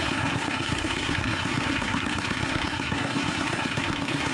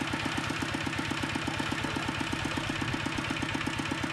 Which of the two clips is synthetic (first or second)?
first